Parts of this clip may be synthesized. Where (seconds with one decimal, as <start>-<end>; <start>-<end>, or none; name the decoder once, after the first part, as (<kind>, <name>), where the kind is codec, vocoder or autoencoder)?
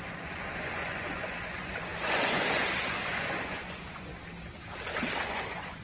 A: 0.0-4.1 (vocoder, Vocos); 5.3-5.8